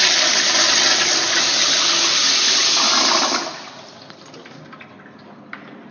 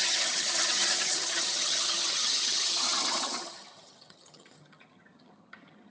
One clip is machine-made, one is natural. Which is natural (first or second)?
first